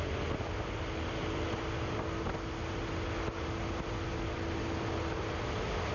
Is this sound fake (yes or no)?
no